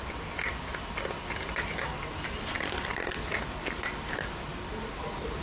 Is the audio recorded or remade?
recorded